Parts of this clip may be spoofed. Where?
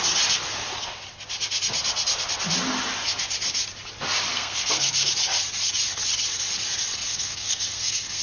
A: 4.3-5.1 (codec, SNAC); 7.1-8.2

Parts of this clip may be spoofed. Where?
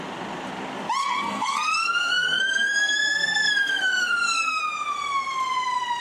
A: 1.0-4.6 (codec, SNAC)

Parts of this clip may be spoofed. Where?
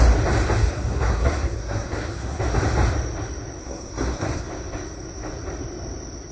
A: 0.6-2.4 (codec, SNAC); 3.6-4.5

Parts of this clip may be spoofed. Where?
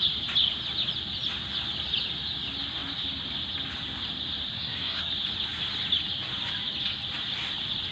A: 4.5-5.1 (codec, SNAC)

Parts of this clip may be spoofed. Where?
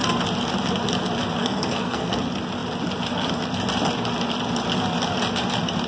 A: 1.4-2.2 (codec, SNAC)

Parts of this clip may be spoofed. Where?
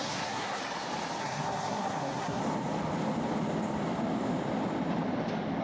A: 0.0-0.6 (codec, SNAC); 1.2-2.4